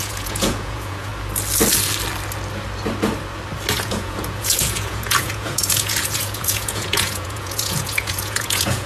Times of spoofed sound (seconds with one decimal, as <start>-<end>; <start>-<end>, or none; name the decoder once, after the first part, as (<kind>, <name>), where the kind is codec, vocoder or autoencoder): 0.0-1.1 (vocoder, Vocos); 3.7-8.9